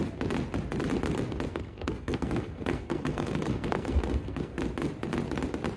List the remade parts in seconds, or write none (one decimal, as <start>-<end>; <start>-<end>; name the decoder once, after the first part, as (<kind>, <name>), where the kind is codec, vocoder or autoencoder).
1.5-4.6 (codec, SNAC)